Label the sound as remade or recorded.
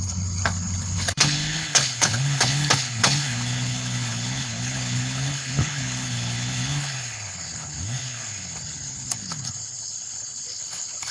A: remade